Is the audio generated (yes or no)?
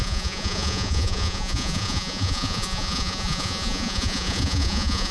yes